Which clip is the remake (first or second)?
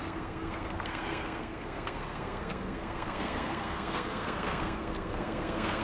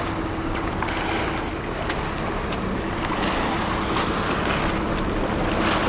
first